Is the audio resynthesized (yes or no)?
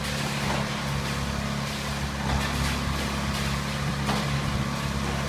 no